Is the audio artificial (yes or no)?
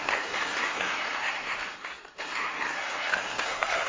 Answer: yes